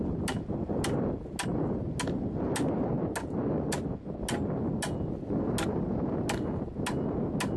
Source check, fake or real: real